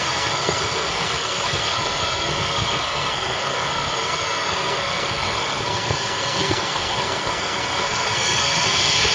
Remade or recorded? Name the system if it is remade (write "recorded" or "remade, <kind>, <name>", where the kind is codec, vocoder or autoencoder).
remade, codec, SNAC